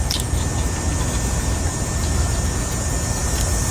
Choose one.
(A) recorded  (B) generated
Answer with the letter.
A